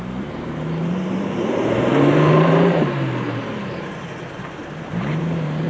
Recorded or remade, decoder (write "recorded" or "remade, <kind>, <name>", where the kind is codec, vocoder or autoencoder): remade, vocoder, BigVGAN v2